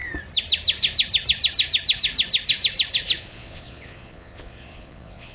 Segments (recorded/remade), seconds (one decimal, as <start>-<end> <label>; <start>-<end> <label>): 0.0-3.2 recorded; 3.2-5.3 remade